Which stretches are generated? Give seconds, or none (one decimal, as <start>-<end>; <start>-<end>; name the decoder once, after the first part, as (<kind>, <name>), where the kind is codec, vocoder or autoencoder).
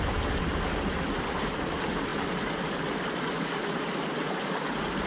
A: none